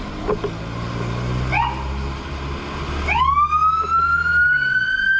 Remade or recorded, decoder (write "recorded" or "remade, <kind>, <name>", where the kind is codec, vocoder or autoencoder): recorded